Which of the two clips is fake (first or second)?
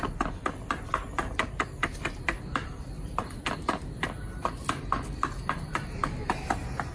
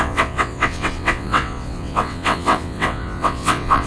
second